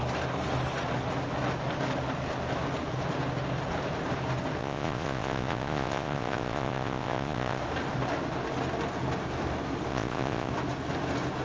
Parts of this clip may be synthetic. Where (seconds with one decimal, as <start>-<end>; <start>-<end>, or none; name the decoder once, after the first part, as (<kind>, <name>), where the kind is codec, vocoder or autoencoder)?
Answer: 4.6-7.6 (vocoder, Vocos); 9.9-10.5